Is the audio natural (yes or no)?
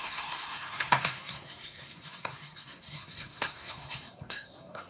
no